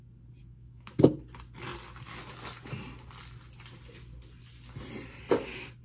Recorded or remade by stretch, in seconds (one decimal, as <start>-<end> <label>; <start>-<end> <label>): 0.0-0.4 recorded; 0.4-1.0 remade; 1.0-5.8 recorded